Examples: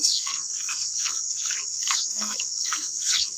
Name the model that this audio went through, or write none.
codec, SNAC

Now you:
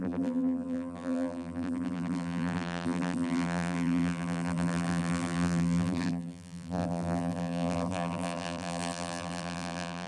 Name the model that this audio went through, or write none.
vocoder, BigVGAN v2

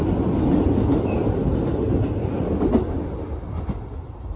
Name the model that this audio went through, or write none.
none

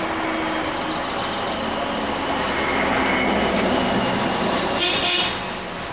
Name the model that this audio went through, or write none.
none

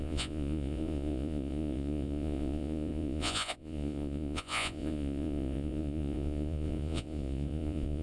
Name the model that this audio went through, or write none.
vocoder, Vocos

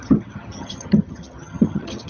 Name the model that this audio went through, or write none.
vocoder, HiFi-GAN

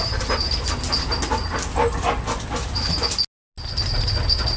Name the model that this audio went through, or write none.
none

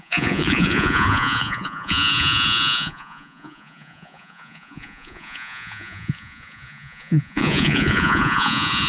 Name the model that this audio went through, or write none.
vocoder, Vocos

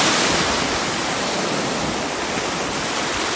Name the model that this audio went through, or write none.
none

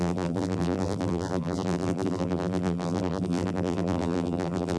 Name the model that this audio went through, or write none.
vocoder, BigVGAN v2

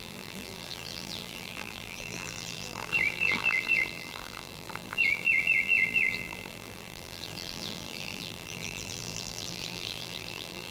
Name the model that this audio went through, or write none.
vocoder, BigVGAN v2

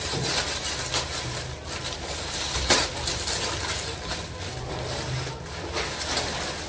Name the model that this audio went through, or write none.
none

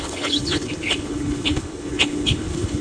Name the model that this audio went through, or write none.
codec, HILCodec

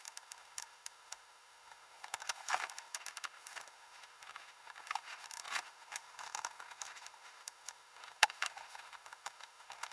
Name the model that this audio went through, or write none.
autoencoder, DAC-VAE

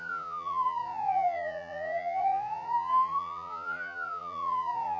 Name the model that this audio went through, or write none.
vocoder, Vocos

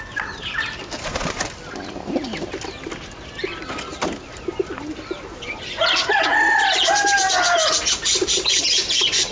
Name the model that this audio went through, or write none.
none